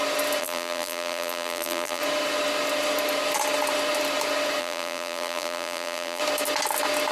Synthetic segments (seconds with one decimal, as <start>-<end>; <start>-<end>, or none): 0.4-2.0; 4.6-6.2